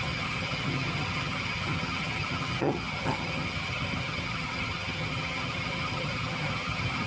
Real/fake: fake